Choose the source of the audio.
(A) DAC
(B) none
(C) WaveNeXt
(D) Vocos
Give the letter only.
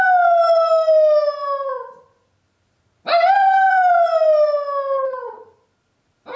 B